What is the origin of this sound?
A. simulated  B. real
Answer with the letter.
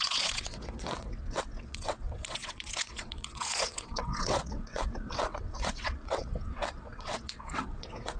A